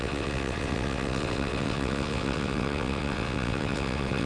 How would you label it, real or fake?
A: fake